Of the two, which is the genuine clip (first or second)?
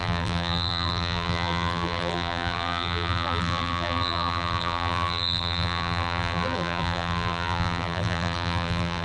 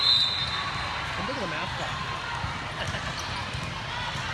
second